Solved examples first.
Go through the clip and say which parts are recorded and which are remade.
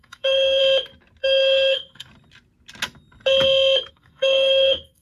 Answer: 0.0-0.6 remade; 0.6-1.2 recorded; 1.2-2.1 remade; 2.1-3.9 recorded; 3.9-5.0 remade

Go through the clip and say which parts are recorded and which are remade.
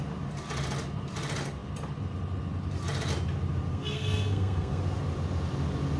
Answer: 0.0-3.7 recorded; 3.7-4.8 remade; 4.8-6.0 recorded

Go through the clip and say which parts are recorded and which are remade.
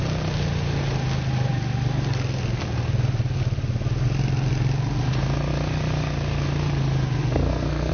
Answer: 0.0-7.2 recorded; 7.2-7.9 remade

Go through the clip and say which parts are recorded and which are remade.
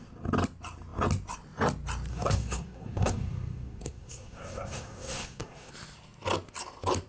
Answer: 0.0-2.1 recorded; 2.1-5.7 remade; 5.7-7.1 recorded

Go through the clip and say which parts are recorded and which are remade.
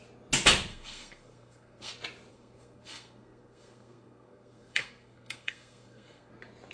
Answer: 0.0-0.7 recorded; 0.7-1.9 remade; 1.9-2.3 recorded; 2.3-6.3 remade; 6.3-6.7 recorded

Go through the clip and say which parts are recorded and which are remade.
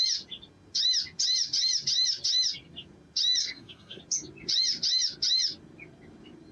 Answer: 0.0-3.4 recorded; 3.4-4.0 remade; 4.0-6.5 recorded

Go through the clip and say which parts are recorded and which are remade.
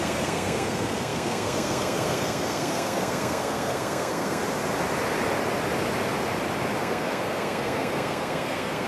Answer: 0.0-4.4 remade; 4.4-6.8 recorded; 6.8-8.9 remade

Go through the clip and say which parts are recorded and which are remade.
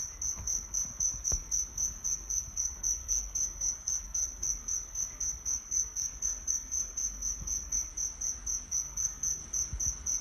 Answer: 0.0-7.9 remade; 7.9-8.7 recorded; 8.7-9.4 remade; 9.4-10.2 recorded